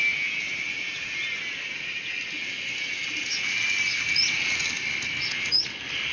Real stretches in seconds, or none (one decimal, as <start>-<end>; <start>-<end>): 0.0-6.1